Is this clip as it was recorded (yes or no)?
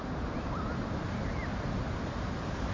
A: yes